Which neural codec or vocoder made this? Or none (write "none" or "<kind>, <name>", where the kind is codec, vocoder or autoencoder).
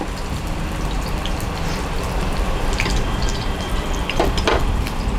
vocoder, BigVGAN v2